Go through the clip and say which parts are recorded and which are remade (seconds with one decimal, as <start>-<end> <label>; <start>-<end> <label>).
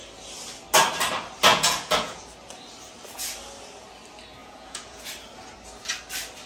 0.0-1.5 recorded; 1.5-2.2 remade; 2.2-4.4 recorded; 4.4-5.0 remade; 5.0-6.5 recorded